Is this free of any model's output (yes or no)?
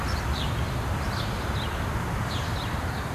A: no